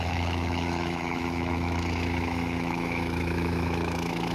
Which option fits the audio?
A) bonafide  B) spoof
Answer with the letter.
B